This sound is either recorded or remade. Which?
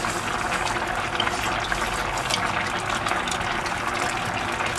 recorded